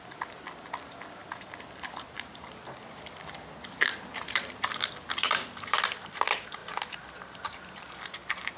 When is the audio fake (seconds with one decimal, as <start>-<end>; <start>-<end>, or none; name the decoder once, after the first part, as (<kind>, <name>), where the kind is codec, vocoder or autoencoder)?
0.0-6.6 (vocoder, BigVGAN v2); 7.1-8.6